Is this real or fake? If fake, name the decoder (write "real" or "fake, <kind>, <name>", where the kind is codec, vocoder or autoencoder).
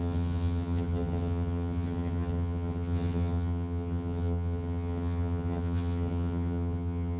fake, vocoder, HiFi-GAN